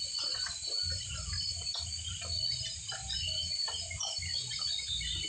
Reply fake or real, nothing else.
real